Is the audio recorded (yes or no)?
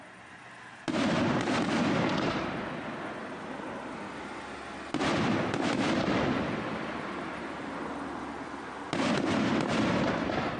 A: yes